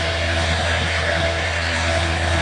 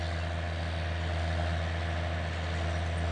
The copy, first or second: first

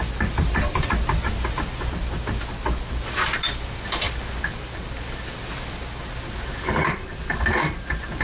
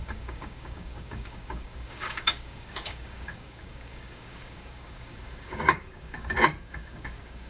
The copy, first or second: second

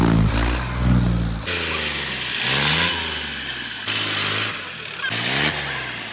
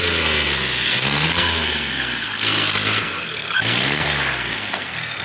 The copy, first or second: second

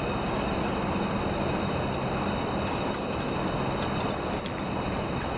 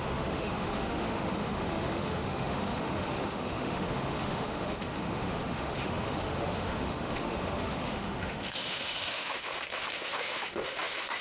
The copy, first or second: second